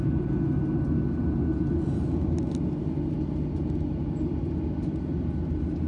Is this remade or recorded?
recorded